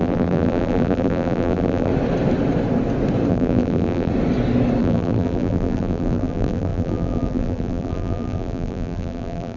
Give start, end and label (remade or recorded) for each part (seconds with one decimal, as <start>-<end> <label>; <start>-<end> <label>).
0.0-1.9 remade; 1.9-3.3 recorded; 3.3-4.1 remade; 4.1-4.8 recorded; 4.8-9.6 remade